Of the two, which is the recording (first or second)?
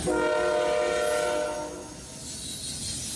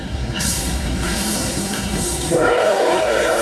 first